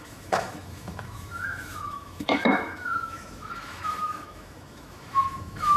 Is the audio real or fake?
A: fake